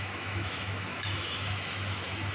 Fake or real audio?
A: fake